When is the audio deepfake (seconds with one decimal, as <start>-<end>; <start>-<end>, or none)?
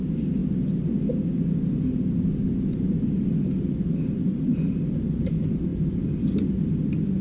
5.7-6.2